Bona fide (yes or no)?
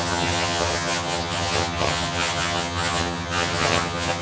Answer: no